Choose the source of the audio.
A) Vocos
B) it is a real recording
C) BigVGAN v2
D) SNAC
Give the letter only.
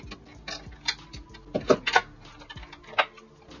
B